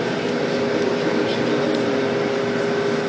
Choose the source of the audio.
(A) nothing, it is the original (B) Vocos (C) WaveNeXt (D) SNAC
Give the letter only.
A